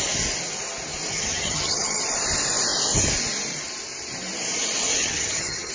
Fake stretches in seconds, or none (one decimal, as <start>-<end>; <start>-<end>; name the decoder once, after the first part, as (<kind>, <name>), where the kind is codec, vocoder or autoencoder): 1.1-2.0 (vocoder, HiFi-GAN); 4.9-5.7